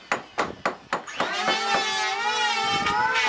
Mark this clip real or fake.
real